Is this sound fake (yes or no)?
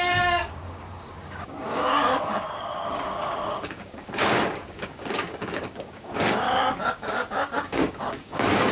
yes